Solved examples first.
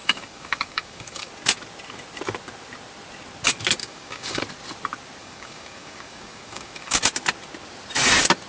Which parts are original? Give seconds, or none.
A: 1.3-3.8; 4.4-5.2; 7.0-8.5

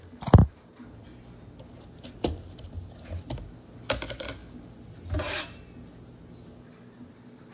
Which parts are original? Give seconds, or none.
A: 0.0-7.5